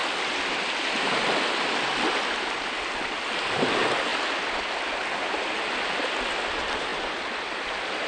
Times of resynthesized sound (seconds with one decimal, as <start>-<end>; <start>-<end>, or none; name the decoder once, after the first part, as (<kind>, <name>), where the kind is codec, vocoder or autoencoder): 6.9-8.1 (vocoder, BigVGAN v2)